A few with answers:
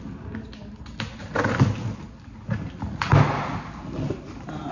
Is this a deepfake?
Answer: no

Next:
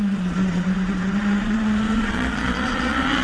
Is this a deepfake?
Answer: yes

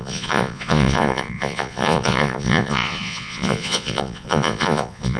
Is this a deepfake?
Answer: yes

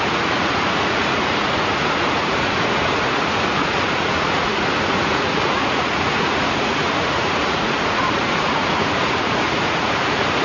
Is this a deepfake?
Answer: yes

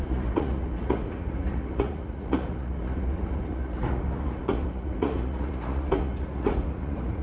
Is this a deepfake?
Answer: yes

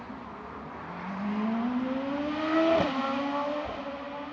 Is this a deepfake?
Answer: no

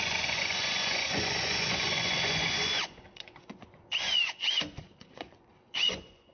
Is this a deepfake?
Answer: yes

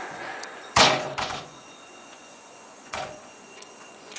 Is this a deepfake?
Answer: yes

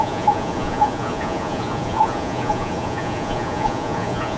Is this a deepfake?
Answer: yes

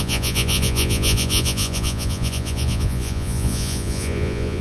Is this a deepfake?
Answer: yes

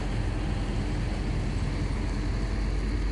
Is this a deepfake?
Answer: no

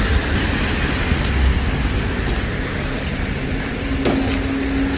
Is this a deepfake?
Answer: no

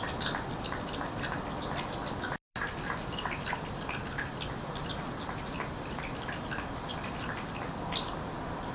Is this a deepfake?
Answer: no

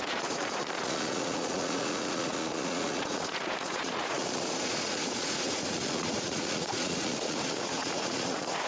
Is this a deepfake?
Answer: yes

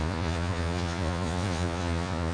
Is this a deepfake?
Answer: yes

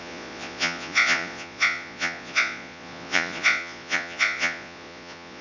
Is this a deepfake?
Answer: yes